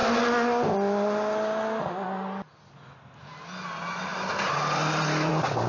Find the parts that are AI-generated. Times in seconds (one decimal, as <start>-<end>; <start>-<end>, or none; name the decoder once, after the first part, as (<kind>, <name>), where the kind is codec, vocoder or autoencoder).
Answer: 4.1-5.3 (vocoder, BigVGAN v2)